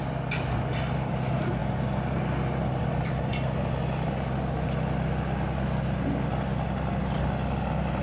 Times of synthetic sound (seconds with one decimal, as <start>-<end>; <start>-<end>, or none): none